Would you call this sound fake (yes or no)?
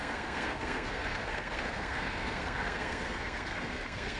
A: yes